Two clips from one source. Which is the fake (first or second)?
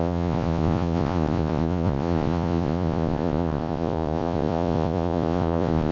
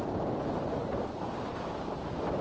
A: first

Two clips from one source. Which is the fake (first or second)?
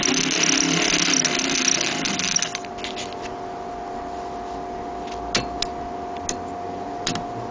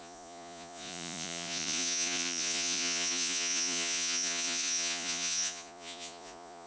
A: second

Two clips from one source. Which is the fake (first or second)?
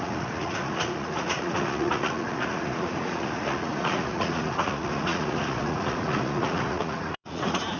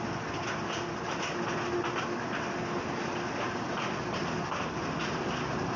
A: first